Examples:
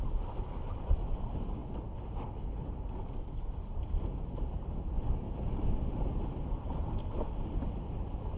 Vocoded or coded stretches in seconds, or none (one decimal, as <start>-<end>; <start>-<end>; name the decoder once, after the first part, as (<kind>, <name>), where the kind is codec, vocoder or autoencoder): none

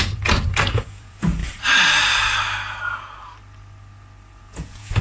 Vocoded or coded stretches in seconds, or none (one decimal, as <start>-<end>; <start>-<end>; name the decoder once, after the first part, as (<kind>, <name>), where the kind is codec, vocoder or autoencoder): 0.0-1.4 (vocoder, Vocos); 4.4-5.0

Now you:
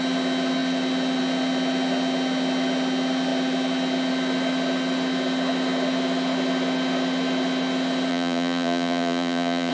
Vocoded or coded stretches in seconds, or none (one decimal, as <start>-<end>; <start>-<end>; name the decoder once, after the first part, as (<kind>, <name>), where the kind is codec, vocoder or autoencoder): 8.1-9.7 (vocoder, Vocos)

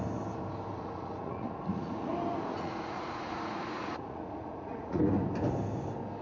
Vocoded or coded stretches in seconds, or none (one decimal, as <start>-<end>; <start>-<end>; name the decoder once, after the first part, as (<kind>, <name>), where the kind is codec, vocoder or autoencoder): 0.7-2.1 (vocoder, Vocos); 2.5-5.0

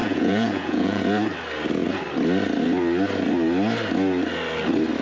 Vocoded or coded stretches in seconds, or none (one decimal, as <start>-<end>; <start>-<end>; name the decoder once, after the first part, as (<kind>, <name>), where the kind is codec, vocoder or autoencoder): 0.0-1.0 (vocoder, Vocos)